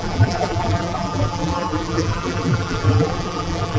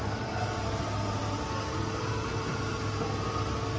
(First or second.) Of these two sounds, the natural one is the second